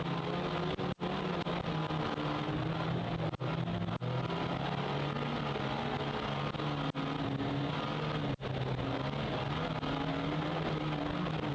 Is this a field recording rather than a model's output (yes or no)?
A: yes